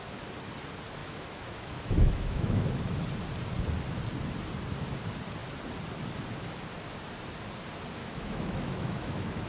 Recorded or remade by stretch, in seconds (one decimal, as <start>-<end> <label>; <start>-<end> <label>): 0.0-1.0 recorded; 1.0-2.9 remade; 2.9-8.0 recorded; 8.0-9.5 remade

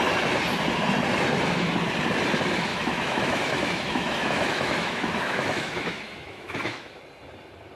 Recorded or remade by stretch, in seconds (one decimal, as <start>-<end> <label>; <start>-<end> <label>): 0.0-2.7 recorded; 2.7-7.0 remade; 7.0-7.8 recorded

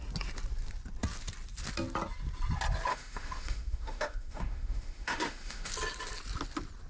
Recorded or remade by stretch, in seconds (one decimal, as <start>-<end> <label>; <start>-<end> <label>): 0.0-2.9 recorded; 2.9-5.7 remade; 5.7-6.9 recorded

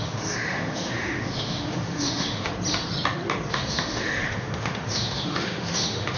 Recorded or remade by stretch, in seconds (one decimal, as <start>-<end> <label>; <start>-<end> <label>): 0.0-2.5 remade; 2.5-3.5 recorded; 3.5-6.2 remade

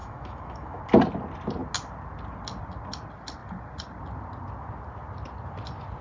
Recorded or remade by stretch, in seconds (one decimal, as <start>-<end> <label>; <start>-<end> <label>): 0.0-0.8 remade; 0.8-6.0 recorded

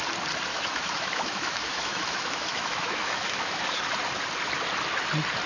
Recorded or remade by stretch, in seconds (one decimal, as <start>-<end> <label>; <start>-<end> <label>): 0.0-0.5 recorded; 0.5-3.6 remade; 3.6-5.5 recorded

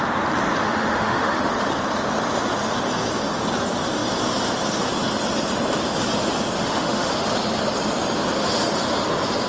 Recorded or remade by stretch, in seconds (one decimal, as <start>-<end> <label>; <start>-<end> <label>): 0.0-0.6 recorded; 0.6-1.5 remade; 1.5-6.6 recorded; 6.6-7.1 remade; 7.1-9.5 recorded

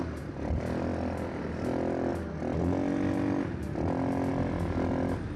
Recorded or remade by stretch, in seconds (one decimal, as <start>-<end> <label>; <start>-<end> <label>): 0.0-5.4 recorded